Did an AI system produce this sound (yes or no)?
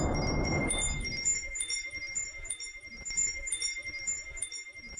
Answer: yes